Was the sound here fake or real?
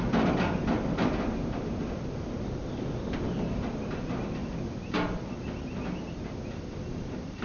real